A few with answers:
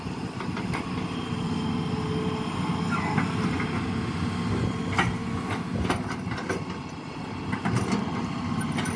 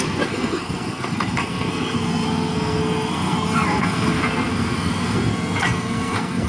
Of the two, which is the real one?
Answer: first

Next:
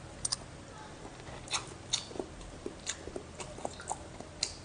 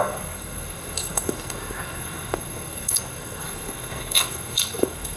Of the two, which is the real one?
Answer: first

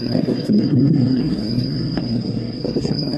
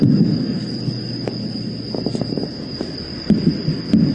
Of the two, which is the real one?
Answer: second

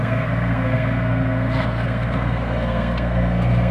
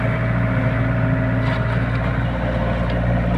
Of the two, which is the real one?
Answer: second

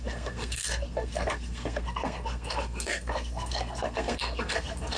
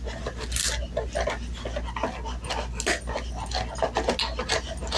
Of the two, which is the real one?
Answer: second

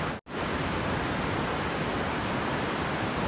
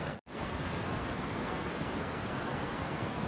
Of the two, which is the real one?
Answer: first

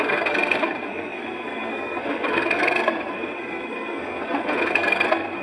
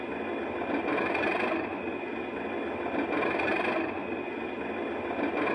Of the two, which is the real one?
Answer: second